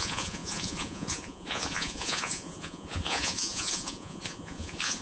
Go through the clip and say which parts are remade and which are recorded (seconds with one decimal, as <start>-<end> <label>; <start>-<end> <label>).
0.0-5.0 remade